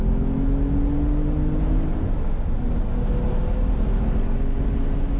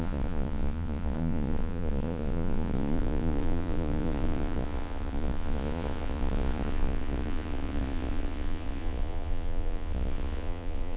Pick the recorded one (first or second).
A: first